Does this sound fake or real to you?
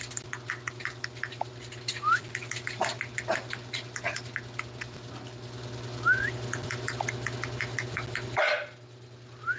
real